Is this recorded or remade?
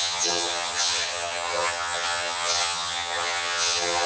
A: remade